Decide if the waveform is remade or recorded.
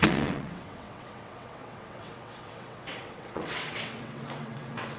remade